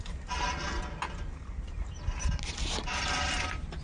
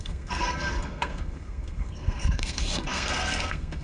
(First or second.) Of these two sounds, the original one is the first